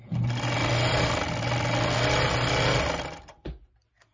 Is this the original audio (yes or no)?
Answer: yes